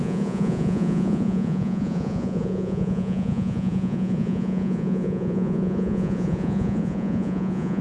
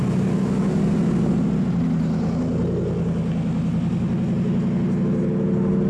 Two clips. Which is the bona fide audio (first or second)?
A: second